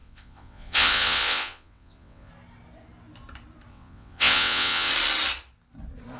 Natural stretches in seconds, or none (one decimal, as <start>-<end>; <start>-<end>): 2.3-3.7; 4.9-6.2